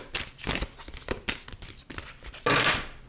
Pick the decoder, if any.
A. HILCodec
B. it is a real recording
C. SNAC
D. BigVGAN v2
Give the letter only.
B